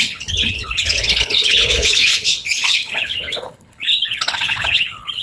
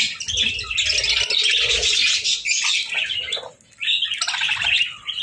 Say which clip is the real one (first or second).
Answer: second